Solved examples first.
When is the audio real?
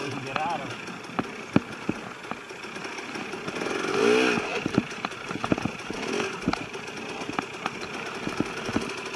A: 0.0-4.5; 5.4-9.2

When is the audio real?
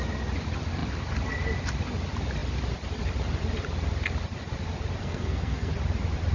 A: 0.0-5.0; 5.7-6.3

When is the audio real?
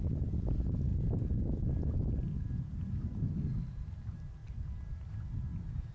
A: 0.0-5.9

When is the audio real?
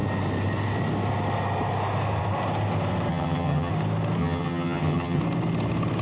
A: 0.0-3.1; 3.7-4.2; 5.2-6.0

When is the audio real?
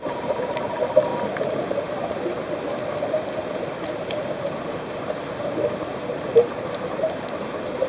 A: 1.1-4.5